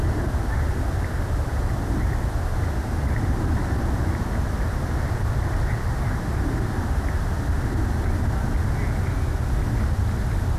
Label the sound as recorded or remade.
recorded